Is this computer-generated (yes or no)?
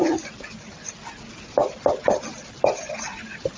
no